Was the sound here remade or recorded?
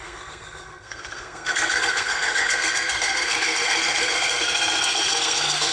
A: remade